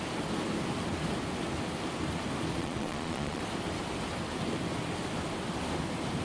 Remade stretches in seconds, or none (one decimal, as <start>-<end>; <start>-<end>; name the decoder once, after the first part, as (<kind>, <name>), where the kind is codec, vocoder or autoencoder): 2.6-3.4 (vocoder, Vocos)